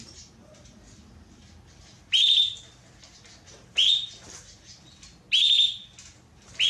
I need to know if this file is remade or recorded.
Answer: recorded